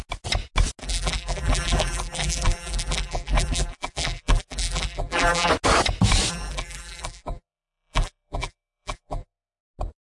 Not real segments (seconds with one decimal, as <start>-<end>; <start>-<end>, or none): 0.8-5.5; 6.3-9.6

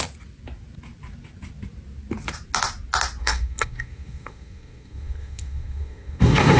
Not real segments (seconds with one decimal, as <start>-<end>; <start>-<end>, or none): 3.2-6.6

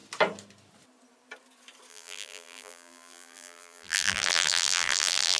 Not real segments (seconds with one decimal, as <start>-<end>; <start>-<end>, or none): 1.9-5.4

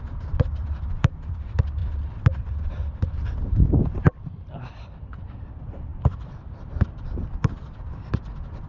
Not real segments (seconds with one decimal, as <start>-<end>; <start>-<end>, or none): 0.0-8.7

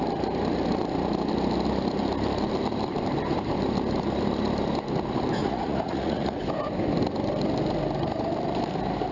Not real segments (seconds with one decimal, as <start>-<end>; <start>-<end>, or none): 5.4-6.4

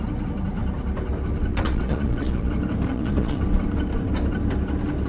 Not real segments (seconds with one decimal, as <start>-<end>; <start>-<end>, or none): 1.5-2.5; 2.9-3.4

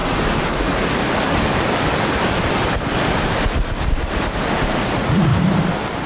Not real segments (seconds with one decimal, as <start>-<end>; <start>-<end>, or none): 0.5-1.0; 4.7-5.3